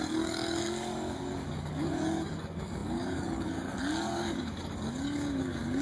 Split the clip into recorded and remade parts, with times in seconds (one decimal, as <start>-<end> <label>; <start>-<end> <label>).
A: 0.0-5.8 remade